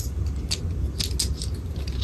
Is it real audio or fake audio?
real